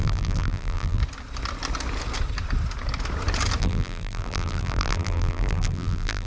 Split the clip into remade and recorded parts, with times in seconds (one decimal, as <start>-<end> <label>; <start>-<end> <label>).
0.0-1.0 remade; 1.0-3.6 recorded; 3.6-6.3 remade